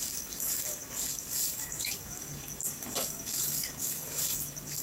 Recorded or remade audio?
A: remade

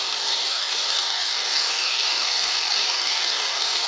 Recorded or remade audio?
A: remade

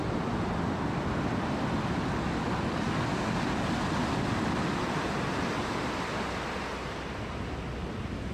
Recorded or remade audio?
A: recorded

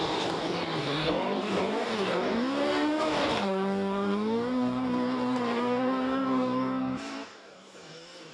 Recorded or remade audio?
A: remade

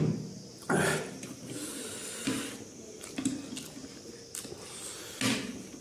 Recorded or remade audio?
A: recorded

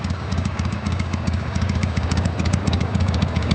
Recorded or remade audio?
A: remade